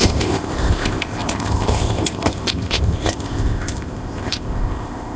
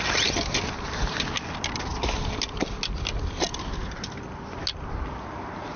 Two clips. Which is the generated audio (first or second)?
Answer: first